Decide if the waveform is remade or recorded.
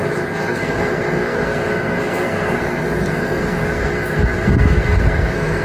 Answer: remade